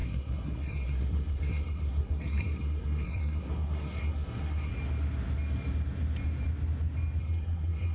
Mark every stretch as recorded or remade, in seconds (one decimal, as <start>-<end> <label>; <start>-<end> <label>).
0.0-4.7 remade; 4.7-7.2 recorded; 7.2-7.9 remade